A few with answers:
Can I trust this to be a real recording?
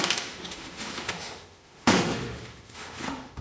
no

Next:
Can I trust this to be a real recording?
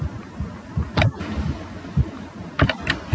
yes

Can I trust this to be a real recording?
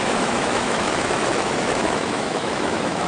no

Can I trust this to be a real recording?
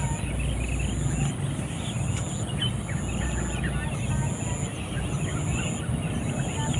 yes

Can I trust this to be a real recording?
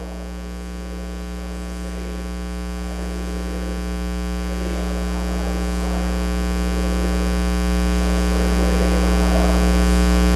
yes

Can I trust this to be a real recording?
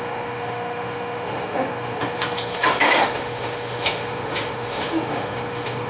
no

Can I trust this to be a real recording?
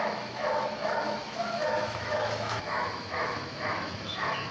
no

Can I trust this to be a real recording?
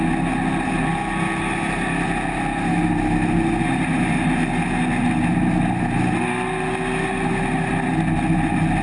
yes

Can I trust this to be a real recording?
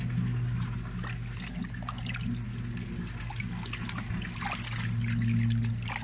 yes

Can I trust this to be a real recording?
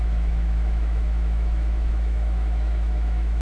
no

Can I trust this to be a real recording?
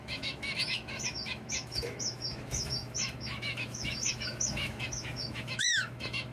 no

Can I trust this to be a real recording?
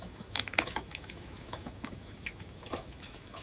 no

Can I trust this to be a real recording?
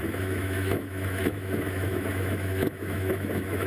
no